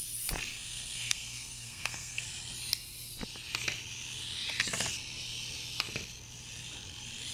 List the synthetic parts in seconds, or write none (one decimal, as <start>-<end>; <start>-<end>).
0.5-2.2